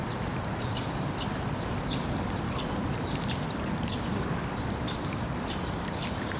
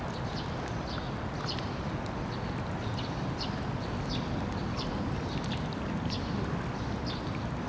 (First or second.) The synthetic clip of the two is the first